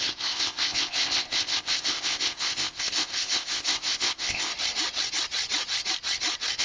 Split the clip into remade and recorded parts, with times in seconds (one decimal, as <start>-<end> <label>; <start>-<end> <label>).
0.0-4.5 remade; 4.5-6.6 recorded